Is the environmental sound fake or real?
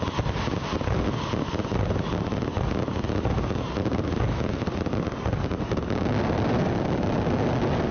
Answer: real